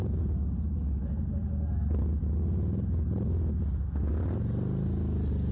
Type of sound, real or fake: real